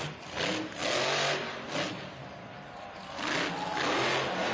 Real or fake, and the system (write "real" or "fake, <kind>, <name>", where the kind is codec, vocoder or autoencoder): real